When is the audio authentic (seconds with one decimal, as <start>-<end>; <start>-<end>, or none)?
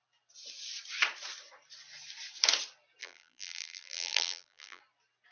0.0-3.0; 4.8-5.3